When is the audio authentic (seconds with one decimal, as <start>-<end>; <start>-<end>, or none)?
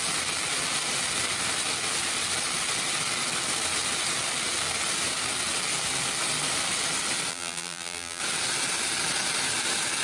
0.0-7.3; 8.2-10.0